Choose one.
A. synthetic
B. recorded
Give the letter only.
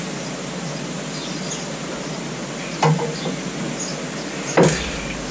B